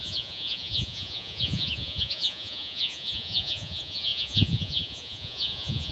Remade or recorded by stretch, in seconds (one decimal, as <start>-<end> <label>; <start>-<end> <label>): 0.0-5.9 remade